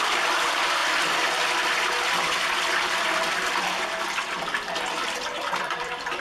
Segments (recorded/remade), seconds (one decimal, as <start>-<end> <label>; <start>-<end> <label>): 0.0-6.2 remade